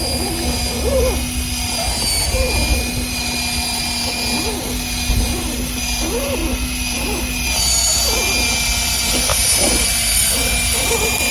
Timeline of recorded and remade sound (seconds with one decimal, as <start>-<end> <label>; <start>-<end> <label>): 0.0-11.3 recorded